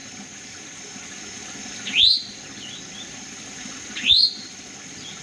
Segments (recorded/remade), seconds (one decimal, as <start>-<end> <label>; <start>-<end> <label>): 0.0-5.2 recorded